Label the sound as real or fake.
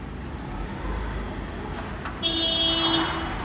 real